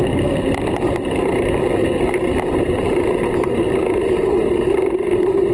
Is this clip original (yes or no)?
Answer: no